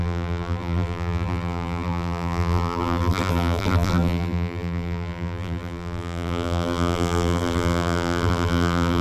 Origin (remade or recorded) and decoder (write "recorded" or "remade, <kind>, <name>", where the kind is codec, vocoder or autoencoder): remade, vocoder, BigVGAN v2